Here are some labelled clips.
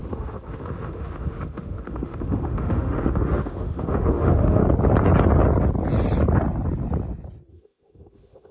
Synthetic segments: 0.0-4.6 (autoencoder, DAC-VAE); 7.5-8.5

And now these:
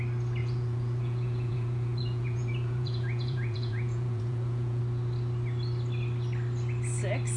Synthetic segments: 0.4-4.8 (vocoder, Vocos)

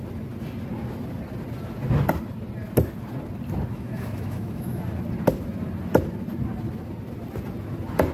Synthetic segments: 3.7-4.8 (autoencoder, DAC-VAE)

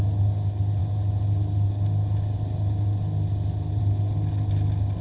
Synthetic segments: none

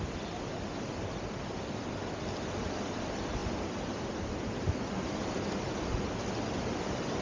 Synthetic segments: none

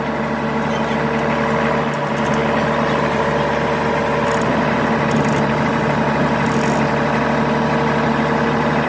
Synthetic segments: none

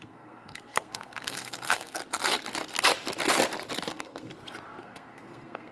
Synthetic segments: 0.0-2.0 (codec, SNAC); 3.9-4.3; 4.8-5.7